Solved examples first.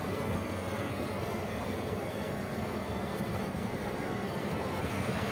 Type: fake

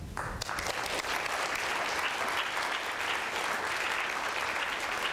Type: real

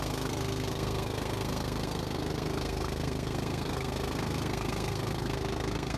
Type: fake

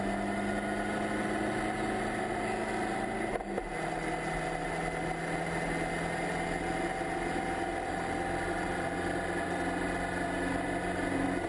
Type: real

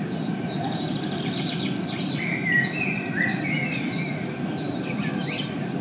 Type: real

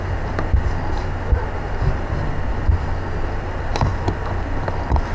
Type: real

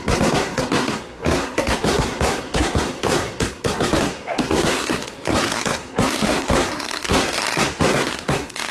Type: fake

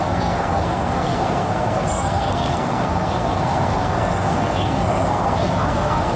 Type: fake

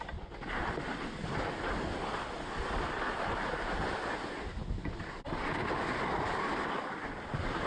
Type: real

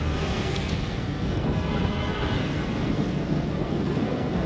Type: fake